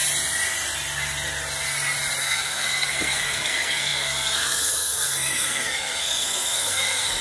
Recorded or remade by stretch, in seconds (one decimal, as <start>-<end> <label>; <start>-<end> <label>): 0.0-2.2 recorded; 2.2-7.2 remade